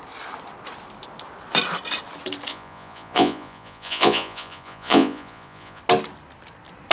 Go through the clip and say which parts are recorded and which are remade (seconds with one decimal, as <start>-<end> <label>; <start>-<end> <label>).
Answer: 0.0-2.5 recorded; 2.5-5.8 remade; 5.8-6.9 recorded